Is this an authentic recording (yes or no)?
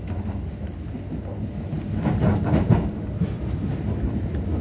yes